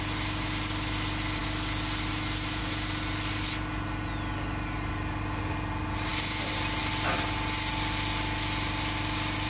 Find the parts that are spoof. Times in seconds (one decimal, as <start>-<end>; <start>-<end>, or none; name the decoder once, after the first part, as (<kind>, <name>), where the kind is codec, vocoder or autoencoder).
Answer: none